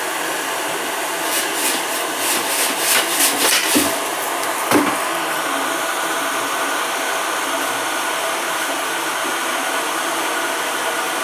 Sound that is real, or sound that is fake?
real